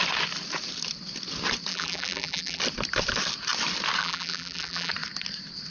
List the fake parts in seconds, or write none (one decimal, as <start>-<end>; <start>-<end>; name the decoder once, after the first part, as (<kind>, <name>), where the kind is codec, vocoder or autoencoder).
1.7-2.6 (vocoder, BigVGAN v2); 4.0-4.9